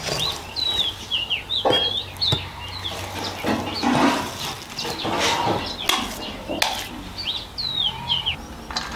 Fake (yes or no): no